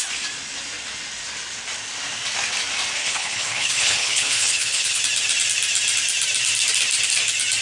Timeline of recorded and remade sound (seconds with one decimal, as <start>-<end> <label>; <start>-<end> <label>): 0.0-3.0 recorded; 3.0-5.0 remade; 5.0-7.6 recorded